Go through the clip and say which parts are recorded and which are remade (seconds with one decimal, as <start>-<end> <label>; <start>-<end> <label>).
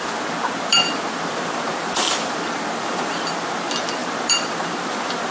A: 0.0-0.7 recorded; 0.7-3.4 remade; 3.4-4.0 recorded; 4.0-5.3 remade